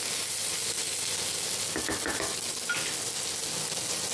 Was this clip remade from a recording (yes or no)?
no